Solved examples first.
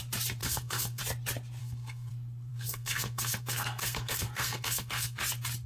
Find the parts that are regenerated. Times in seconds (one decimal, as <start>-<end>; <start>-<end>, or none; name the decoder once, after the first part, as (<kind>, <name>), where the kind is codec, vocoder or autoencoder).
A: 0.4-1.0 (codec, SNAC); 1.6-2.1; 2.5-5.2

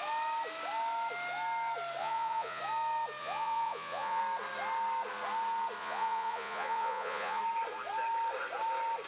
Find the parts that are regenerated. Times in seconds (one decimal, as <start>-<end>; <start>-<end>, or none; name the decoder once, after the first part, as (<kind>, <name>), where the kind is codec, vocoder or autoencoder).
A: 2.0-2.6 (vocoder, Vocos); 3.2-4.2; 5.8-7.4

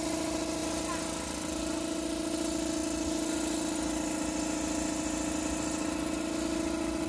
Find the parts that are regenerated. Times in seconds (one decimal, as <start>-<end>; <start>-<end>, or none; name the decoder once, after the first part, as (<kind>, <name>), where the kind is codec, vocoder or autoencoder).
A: none

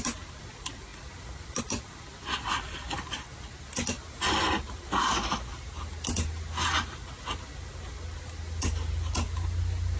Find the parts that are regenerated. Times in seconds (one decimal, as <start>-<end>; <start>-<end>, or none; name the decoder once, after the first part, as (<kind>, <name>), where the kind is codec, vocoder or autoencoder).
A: none

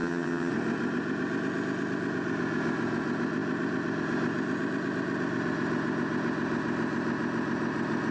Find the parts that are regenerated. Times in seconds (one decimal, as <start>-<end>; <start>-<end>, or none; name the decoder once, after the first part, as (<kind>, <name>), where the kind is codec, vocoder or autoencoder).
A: 0.0-0.5 (vocoder, HiFi-GAN)

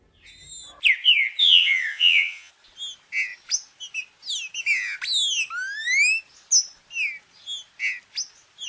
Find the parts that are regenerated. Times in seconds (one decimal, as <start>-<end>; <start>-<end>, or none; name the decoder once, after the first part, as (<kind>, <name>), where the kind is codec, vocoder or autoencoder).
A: 1.4-2.5 (vocoder, WaveNeXt)